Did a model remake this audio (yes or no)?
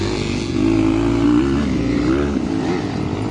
no